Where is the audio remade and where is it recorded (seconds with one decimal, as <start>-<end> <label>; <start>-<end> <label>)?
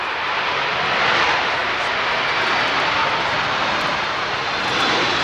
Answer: 0.0-1.6 remade; 1.6-4.7 recorded; 4.7-5.2 remade